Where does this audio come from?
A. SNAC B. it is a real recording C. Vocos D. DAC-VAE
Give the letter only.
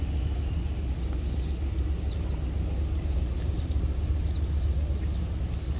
B